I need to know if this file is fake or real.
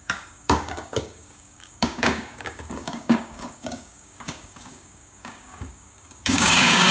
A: fake